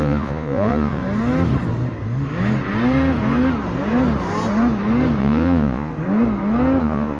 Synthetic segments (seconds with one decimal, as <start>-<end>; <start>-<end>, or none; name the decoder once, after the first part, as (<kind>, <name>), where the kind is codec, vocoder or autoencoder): 0.0-1.0 (vocoder, Vocos); 5.2-5.9; 6.8-7.2